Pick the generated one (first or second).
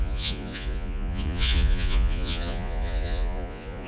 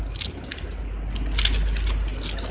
first